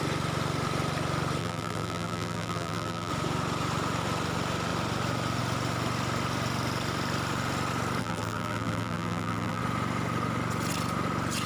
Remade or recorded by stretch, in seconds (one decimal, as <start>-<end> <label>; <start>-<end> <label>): 0.0-1.4 recorded; 1.4-3.1 remade; 3.1-8.0 recorded; 8.0-9.6 remade; 9.6-11.5 recorded